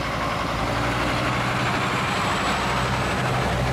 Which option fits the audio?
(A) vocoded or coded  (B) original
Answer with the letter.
B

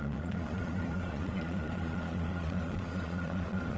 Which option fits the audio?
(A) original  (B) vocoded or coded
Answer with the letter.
B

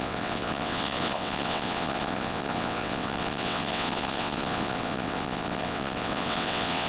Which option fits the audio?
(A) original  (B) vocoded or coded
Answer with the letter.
B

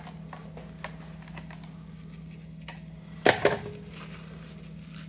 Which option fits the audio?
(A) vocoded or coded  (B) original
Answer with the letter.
B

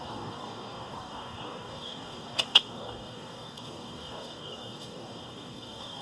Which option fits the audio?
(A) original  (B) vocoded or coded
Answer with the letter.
B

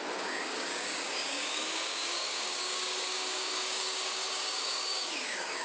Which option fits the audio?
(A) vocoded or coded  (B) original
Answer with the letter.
A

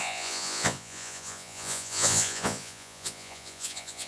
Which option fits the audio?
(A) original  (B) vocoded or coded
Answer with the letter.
B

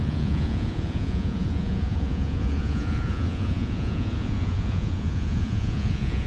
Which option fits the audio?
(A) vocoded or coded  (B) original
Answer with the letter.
A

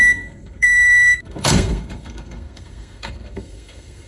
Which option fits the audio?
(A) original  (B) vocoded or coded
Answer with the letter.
B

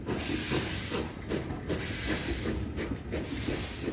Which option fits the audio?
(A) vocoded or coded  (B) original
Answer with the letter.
B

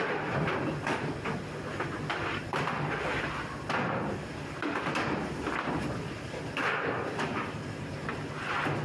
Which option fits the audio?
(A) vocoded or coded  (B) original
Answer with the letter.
B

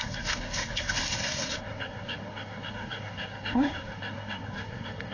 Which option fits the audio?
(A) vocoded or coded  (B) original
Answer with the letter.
A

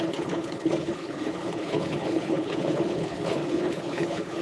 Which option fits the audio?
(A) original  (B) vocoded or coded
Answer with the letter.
B